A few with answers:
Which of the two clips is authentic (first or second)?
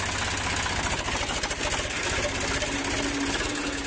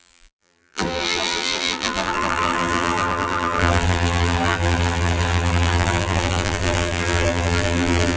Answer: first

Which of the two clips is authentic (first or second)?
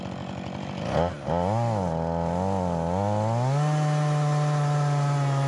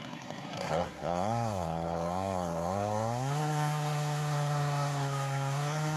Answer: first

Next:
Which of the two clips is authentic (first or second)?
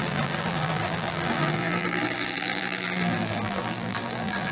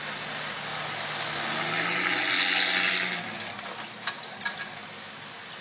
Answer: second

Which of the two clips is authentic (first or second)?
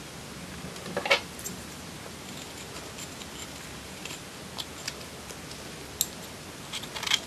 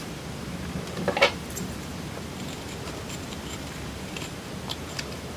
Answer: first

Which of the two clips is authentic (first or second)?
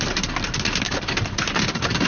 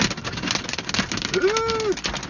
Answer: second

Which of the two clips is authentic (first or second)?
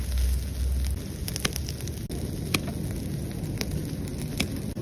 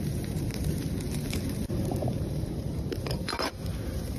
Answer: first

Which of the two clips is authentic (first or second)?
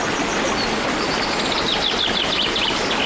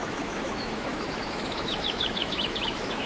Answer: first